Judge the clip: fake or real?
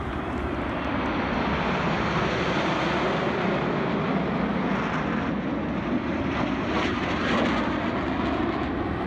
real